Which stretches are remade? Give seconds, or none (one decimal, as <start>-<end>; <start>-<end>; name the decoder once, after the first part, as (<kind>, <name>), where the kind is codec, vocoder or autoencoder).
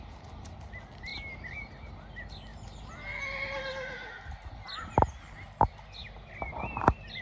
none